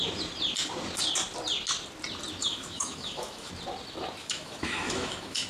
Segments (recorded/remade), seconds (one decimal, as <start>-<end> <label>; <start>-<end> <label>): 0.0-2.4 recorded; 2.4-3.5 remade; 3.5-4.2 recorded; 4.2-5.5 remade